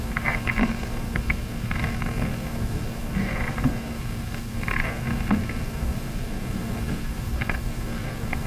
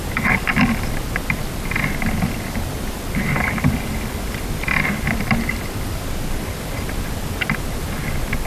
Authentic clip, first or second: second